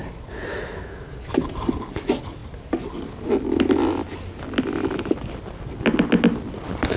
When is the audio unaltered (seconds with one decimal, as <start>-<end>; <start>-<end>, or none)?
0.0-0.5; 1.1-7.0